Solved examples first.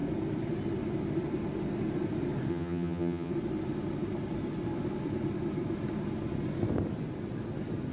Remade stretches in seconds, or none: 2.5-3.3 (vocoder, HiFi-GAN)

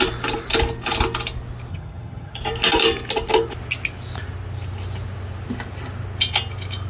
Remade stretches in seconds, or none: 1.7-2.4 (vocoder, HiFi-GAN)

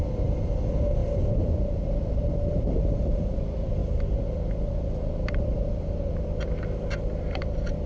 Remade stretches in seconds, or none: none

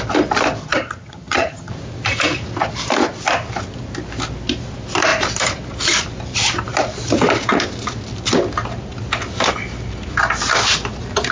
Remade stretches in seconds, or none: 0.6-1.7 (vocoder, HiFi-GAN)

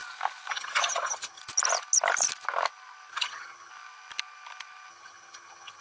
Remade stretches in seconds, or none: 0.5-1.4 (vocoder, HiFi-GAN); 3.1-3.7; 4.9-5.8

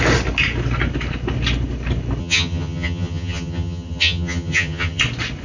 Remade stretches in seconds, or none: 2.2-5.0 (vocoder, HiFi-GAN)

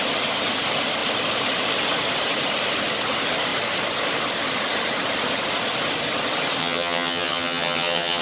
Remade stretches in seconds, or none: 6.6-8.2 (vocoder, HiFi-GAN)

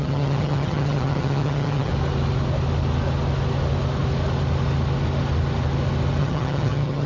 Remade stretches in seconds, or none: 0.0-1.9 (vocoder, HiFi-GAN); 6.2-7.1